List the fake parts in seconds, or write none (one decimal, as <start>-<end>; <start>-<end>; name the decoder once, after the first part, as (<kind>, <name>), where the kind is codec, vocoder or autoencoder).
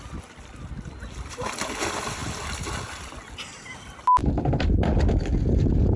4.2-5.4 (vocoder, BigVGAN v2)